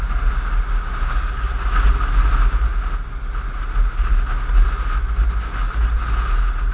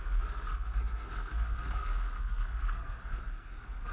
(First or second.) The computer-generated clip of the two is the second